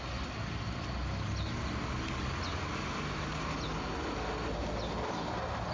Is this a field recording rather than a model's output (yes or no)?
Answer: yes